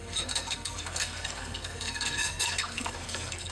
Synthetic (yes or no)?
yes